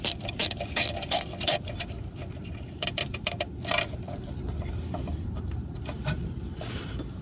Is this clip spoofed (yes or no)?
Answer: yes